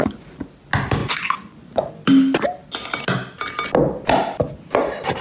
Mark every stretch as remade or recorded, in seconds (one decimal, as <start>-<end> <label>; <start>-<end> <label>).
0.0-1.0 recorded; 1.0-1.9 remade; 1.9-5.2 recorded